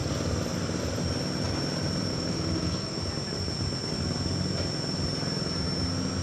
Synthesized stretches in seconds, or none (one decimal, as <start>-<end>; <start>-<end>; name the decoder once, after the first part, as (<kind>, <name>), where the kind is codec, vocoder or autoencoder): 2.1-3.0 (autoencoder, DAC-VAE)